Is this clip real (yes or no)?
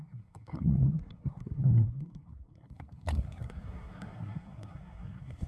no